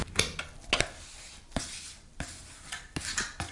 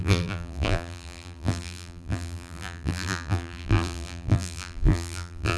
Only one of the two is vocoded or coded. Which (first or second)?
second